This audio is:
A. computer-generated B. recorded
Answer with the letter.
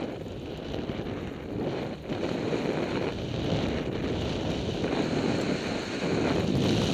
B